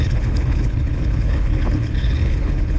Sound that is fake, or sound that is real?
fake